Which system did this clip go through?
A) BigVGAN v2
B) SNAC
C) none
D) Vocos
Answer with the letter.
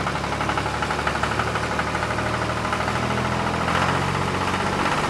C